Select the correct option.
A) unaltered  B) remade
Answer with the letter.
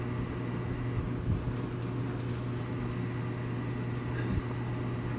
A